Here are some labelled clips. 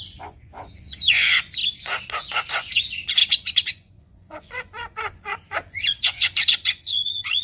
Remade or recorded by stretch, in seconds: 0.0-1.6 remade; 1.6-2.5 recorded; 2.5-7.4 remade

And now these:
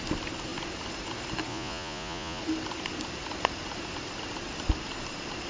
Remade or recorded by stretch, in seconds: 0.0-1.5 recorded; 1.5-2.4 remade; 2.4-5.5 recorded

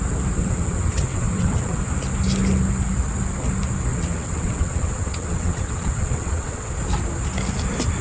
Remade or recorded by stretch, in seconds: 0.0-0.4 recorded; 0.4-1.8 remade; 1.8-3.9 recorded; 3.9-6.7 remade; 6.7-8.0 recorded

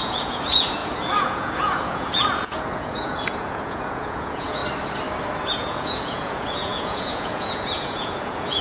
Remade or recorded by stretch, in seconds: 0.0-4.6 remade; 4.6-5.5 recorded; 5.5-8.6 remade

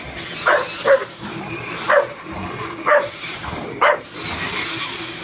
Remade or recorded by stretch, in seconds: 0.0-1.0 recorded; 1.0-4.0 remade; 4.0-5.2 recorded

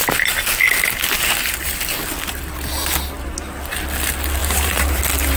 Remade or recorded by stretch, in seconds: 0.0-4.4 recorded; 4.4-5.0 remade; 5.0-5.4 recorded